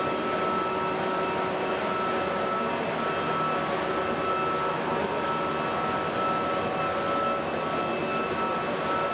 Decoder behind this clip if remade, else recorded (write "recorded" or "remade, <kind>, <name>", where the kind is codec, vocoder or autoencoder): recorded